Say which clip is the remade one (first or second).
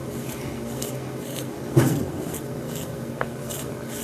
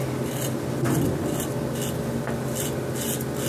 first